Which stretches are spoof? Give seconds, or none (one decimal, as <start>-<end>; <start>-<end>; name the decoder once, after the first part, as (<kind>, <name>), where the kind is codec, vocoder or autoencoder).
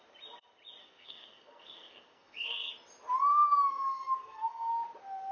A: 0.8-2.7 (codec, SNAC); 3.3-4.7